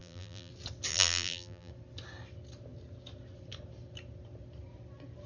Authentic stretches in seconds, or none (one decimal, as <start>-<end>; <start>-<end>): 0.5-0.9; 1.7-5.3